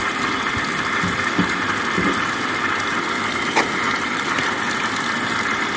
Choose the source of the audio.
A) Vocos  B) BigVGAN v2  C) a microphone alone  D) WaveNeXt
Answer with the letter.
C